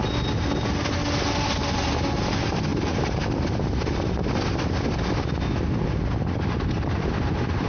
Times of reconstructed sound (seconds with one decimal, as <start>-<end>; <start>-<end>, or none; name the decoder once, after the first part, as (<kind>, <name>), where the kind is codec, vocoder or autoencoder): 2.7-3.2 (vocoder, BigVGAN v2)